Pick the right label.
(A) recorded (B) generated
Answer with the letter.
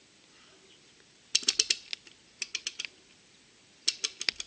A